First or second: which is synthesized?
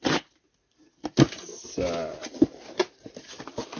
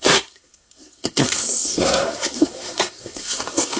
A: second